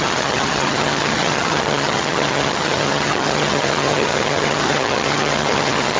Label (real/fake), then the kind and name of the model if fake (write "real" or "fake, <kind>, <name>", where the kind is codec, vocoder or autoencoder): fake, vocoder, HiFi-GAN